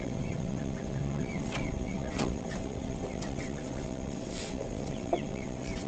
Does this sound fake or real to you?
fake